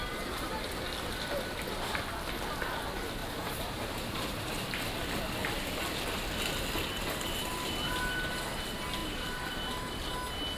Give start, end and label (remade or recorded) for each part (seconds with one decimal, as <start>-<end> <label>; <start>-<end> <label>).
0.0-3.2 recorded; 3.2-4.7 remade; 4.7-9.0 recorded; 9.0-10.1 remade; 10.1-10.6 recorded